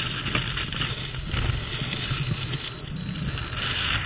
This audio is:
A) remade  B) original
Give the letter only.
B